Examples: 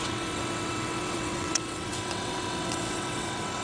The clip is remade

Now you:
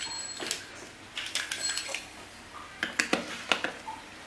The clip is recorded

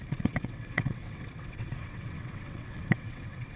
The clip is remade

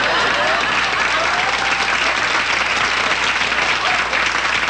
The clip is recorded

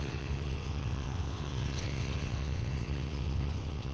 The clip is remade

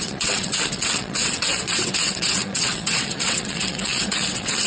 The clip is remade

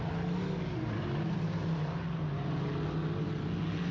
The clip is recorded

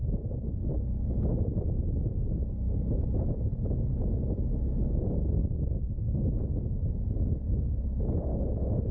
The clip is recorded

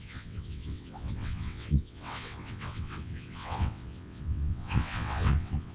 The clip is remade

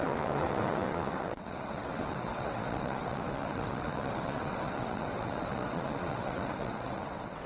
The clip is remade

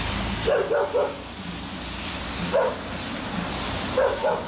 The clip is recorded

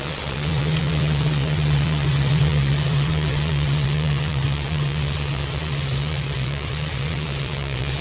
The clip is remade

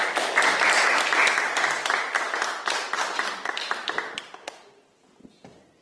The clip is recorded